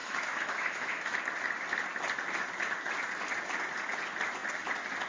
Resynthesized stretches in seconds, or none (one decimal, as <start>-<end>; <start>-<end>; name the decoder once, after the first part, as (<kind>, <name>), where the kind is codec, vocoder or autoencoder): 0.0-1.2 (autoencoder, DAC-VAE)